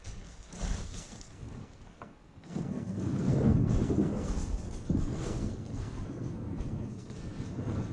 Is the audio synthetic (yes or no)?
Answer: yes